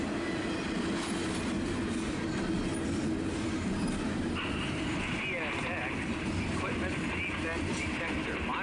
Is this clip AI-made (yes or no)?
no